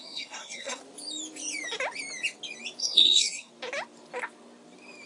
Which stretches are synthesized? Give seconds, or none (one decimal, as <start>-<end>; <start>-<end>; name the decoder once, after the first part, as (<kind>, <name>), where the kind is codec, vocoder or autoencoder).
0.0-0.8 (codec, SNAC); 2.8-3.5